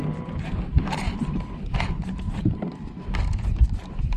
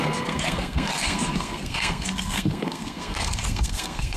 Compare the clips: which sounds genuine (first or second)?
first